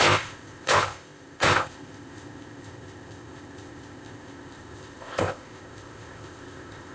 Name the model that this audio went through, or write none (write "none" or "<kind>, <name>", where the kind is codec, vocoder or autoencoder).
codec, ZipCodec